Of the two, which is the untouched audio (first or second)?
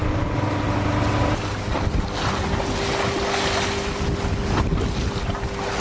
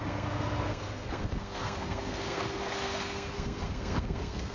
first